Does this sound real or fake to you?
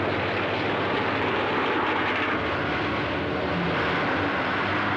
real